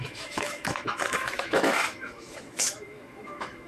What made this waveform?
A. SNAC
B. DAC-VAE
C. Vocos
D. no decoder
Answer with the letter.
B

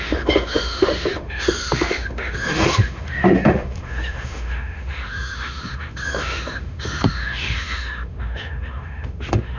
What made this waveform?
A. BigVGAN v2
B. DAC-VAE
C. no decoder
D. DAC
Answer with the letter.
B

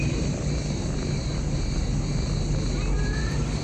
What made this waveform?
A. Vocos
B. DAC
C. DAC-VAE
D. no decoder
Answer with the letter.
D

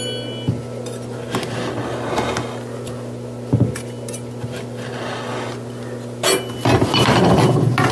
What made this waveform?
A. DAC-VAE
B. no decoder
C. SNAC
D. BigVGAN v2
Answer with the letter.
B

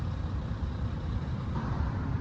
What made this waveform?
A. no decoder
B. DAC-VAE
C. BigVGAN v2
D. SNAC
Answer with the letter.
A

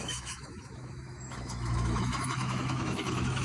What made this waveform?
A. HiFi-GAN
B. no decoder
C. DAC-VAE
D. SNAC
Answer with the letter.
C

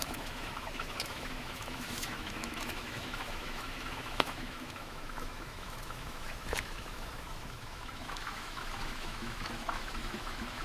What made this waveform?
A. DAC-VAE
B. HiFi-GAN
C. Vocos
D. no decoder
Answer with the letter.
A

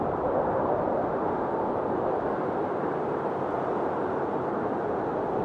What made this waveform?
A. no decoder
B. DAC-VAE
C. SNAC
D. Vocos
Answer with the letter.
A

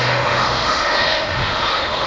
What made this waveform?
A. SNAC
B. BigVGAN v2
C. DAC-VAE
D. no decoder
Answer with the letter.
C